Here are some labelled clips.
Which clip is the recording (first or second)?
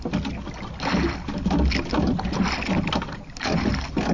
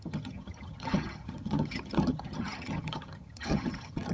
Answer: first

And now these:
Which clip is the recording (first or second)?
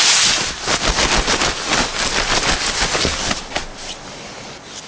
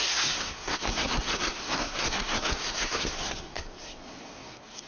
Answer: first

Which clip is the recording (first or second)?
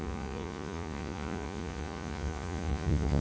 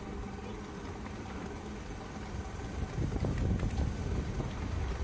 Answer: second